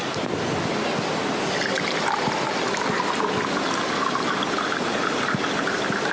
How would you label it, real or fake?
real